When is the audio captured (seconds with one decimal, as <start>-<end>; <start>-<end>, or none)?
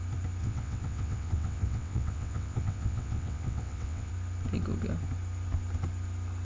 0.0-0.4; 4.1-6.4